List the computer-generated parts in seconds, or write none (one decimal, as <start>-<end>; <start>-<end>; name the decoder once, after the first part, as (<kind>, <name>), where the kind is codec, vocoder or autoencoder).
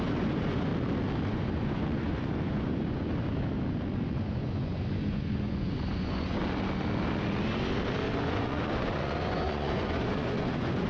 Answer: 0.0-0.7 (vocoder, Vocos); 1.3-3.1; 4.1-6.4; 8.2-10.9